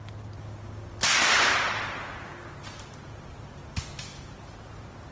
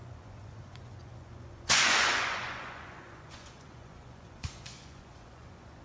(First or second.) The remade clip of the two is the second